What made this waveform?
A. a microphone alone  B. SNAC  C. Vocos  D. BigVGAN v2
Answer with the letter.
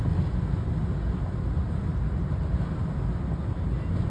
A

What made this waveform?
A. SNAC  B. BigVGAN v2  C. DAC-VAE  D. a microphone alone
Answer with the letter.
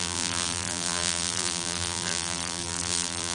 B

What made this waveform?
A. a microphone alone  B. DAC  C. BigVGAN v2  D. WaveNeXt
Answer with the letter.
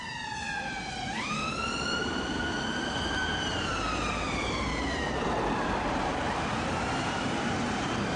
C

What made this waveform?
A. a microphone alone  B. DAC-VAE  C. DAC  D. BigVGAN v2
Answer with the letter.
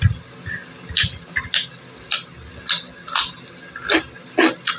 A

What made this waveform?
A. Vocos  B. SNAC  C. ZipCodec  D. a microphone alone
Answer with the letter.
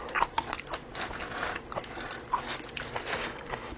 D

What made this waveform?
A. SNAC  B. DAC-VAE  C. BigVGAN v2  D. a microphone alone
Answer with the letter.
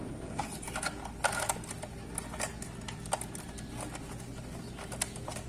D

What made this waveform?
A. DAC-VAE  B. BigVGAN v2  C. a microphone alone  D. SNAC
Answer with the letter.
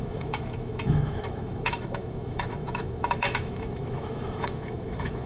A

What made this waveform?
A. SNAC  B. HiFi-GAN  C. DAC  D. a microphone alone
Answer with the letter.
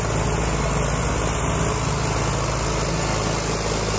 D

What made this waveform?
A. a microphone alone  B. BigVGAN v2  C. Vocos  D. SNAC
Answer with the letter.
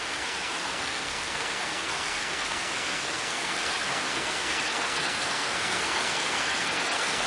D